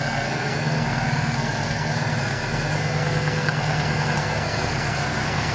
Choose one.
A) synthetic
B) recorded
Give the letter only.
A